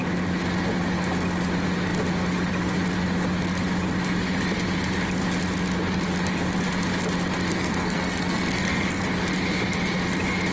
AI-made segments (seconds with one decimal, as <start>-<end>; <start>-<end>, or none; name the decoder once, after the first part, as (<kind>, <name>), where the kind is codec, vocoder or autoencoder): 7.5-9.0 (codec, SNAC)